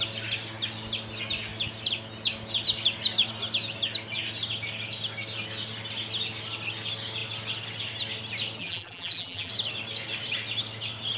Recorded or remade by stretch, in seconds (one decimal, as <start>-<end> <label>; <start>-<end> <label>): 0.0-8.6 recorded; 8.6-9.5 remade; 9.5-11.2 recorded